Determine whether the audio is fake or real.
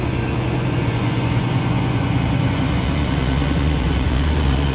fake